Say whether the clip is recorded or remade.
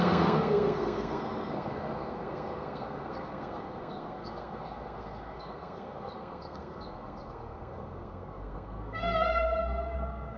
remade